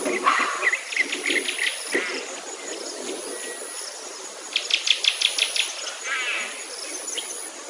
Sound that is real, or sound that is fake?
real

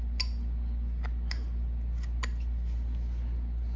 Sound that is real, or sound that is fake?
real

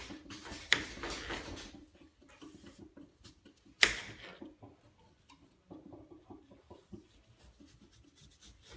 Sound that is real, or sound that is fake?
real